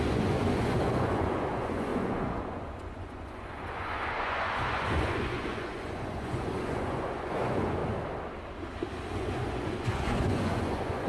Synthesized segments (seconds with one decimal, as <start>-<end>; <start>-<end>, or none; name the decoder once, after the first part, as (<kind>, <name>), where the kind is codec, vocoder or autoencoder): 0.0-7.8 (vocoder, Vocos); 9.1-11.1